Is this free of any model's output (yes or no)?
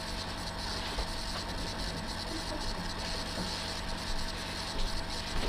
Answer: yes